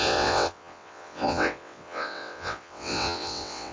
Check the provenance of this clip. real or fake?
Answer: fake